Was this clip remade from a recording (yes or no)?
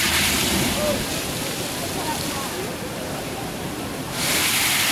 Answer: yes